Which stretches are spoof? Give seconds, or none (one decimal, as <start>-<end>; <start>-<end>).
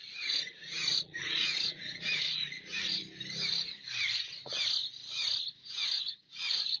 0.0-3.0; 5.6-6.8